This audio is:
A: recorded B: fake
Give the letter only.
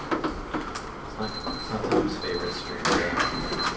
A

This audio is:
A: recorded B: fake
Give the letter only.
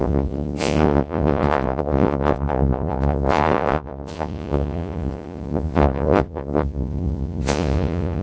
B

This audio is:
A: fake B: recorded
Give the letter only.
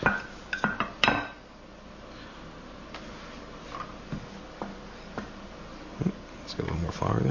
B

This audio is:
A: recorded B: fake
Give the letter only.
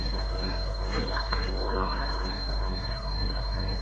B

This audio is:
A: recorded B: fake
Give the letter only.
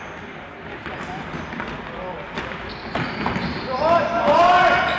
A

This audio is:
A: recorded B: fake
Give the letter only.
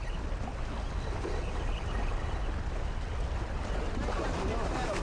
A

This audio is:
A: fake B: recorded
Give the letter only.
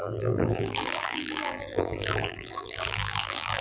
A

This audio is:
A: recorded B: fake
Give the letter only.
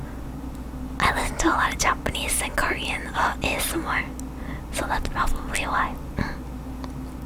A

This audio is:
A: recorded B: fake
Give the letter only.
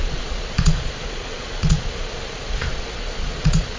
B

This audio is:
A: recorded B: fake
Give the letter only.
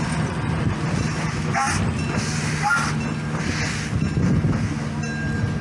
A